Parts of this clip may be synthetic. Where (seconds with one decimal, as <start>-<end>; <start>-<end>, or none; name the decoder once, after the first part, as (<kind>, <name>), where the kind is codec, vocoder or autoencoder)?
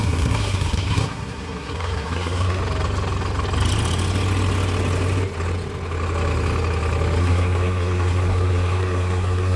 0.0-2.6 (codec, SNAC); 7.2-9.6